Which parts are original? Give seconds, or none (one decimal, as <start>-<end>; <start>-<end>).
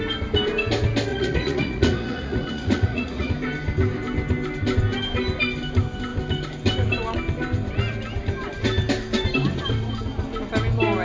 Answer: 0.0-1.1; 3.3-11.0